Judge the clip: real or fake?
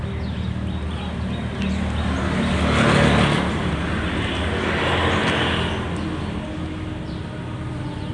real